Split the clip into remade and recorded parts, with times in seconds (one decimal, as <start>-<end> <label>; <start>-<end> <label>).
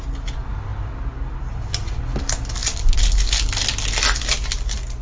0.0-2.6 recorded; 2.6-3.1 remade; 3.1-5.0 recorded